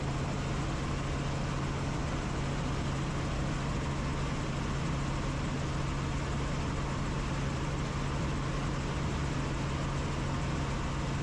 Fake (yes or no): no